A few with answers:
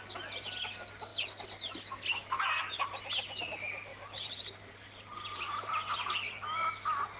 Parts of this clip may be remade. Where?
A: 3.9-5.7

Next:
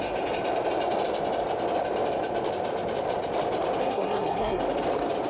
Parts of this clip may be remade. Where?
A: 3.8-4.6

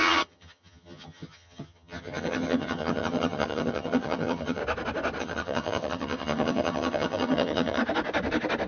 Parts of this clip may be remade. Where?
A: 0.0-4.6; 5.2-7.8

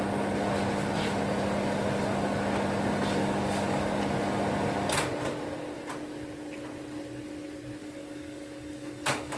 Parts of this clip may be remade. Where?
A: 3.2-4.0; 7.8-9.4

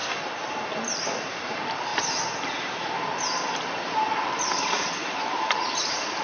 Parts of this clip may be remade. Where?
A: 0.6-1.9; 4.3-6.2

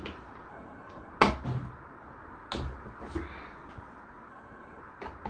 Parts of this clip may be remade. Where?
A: 0.5-1.1; 4.3-4.8